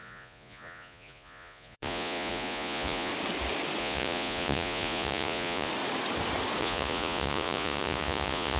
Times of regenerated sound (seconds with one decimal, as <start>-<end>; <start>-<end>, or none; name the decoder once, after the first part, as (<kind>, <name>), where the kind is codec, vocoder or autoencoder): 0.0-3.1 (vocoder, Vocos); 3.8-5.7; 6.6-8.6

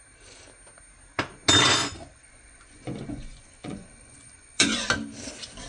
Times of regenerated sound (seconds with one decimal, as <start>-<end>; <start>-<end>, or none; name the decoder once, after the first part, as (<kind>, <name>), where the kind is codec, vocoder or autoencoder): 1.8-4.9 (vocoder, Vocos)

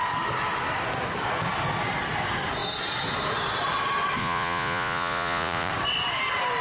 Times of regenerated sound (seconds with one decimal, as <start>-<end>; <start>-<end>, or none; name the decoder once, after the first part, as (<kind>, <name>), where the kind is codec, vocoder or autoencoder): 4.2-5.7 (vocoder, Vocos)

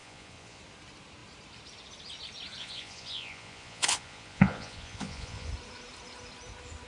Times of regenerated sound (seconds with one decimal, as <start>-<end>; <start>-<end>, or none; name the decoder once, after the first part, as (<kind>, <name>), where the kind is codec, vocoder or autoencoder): 0.0-0.6 (vocoder, Vocos); 2.6-5.5